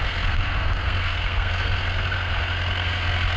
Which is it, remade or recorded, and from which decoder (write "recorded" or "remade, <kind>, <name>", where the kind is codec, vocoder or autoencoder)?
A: remade, codec, SNAC